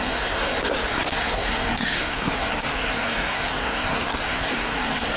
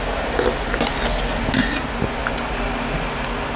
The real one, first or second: second